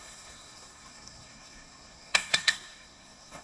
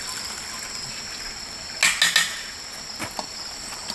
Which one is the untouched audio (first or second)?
second